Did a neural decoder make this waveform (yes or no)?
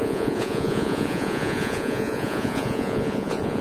yes